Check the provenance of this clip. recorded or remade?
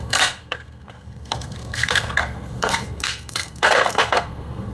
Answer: remade